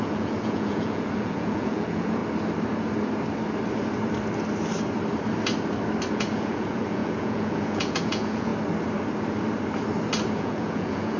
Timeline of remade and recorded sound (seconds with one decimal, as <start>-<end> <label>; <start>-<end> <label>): 0.0-2.2 remade; 2.2-6.1 recorded; 6.1-8.5 remade; 8.5-10.4 recorded; 10.4-11.2 remade